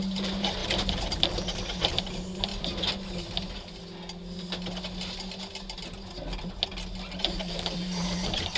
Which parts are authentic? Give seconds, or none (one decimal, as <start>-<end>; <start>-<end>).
2.5-7.2